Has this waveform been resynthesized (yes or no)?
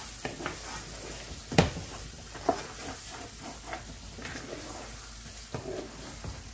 no